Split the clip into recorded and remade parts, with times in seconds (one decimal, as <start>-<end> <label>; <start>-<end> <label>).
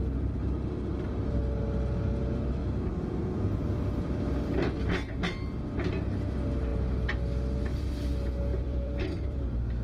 0.0-8.5 recorded; 8.5-9.4 remade; 9.4-9.8 recorded